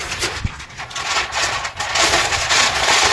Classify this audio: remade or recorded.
remade